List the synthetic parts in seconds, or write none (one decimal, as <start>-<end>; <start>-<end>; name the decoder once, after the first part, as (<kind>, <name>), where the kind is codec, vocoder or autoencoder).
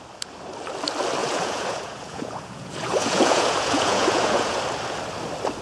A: 1.2-4.6 (vocoder, Vocos)